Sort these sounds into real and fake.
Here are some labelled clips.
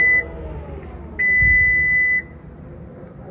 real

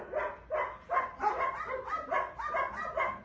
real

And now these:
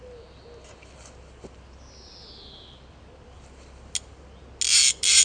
real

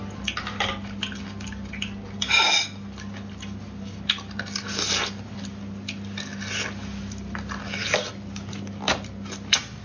real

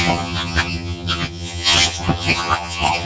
fake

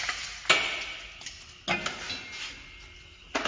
real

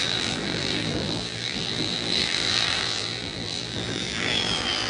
fake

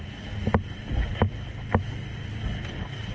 real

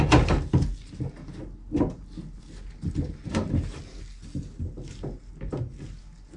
real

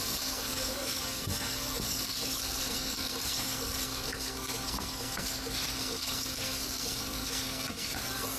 fake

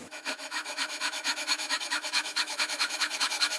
fake